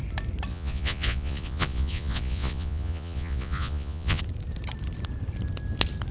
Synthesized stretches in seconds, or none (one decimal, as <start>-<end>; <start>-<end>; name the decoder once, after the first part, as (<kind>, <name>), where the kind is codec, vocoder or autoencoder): 0.5-4.2 (vocoder, Vocos)